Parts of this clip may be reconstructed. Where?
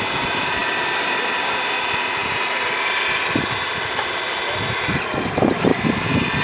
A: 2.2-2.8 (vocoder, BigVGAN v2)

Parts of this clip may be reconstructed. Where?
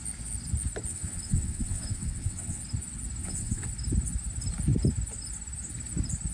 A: 0.9-2.6 (vocoder, WaveNeXt); 3.2-3.7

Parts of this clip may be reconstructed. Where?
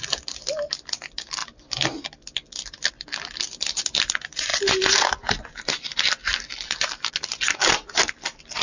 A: none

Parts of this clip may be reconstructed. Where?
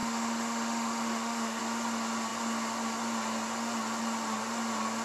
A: 0.0-1.6 (autoencoder, DAC-VAE)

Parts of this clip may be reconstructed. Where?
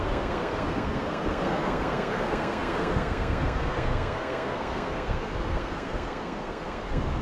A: 0.0-7.2 (codec, SNAC)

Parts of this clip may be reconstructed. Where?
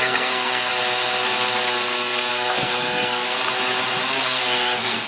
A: 0.0-0.7 (codec, SNAC); 2.3-3.4; 4.2-5.1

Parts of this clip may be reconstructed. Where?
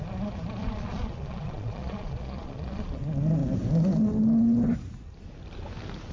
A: 0.6-3.0 (vocoder, Vocos)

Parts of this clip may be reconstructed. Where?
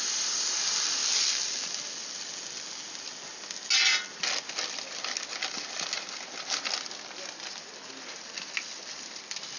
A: none